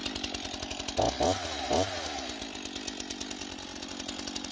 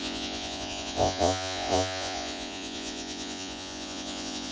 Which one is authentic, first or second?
first